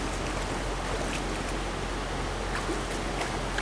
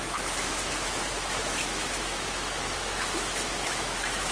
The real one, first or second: first